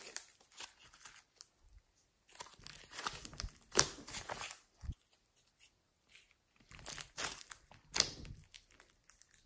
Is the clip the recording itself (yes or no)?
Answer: yes